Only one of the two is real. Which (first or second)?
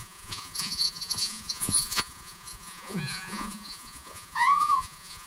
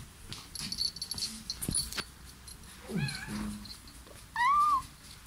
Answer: second